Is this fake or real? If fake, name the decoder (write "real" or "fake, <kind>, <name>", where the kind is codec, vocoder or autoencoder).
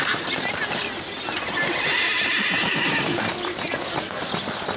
real